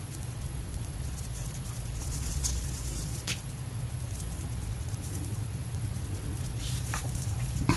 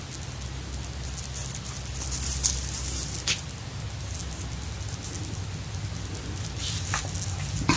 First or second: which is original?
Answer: second